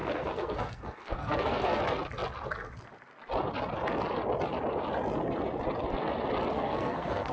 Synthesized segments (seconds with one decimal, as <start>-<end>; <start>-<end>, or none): 0.0-1.8; 6.5-7.3